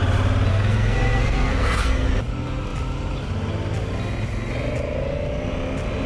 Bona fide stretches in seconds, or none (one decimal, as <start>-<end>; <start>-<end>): 0.0-0.5; 2.1-6.1